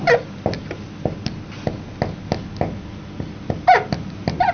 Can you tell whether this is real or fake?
real